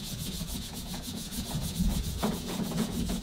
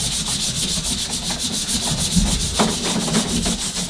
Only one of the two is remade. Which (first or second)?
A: first